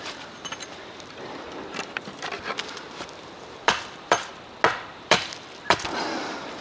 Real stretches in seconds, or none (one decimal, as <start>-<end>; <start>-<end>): 4.3-4.9